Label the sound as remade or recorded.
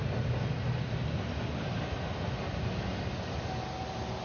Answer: recorded